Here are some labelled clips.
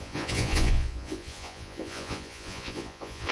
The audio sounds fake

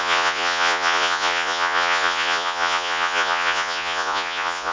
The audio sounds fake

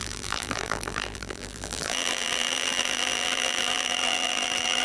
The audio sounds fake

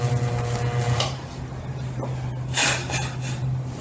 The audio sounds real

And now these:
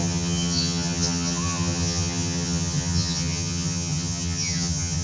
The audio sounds fake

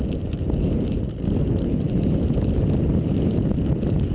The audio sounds real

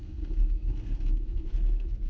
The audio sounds fake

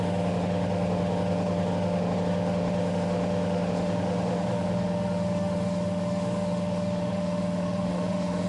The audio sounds fake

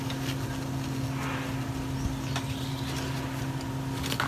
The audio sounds real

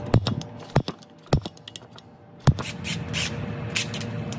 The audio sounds real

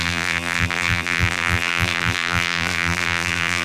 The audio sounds fake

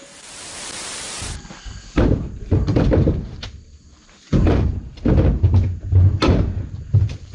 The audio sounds fake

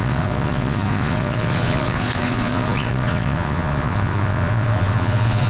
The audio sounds fake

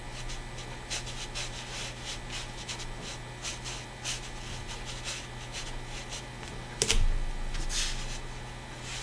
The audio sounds real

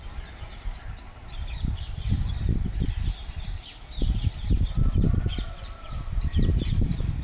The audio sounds fake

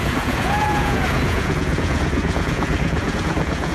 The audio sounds fake